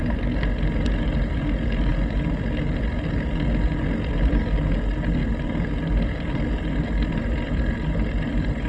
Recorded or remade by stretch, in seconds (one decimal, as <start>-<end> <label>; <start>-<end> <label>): 0.0-8.7 recorded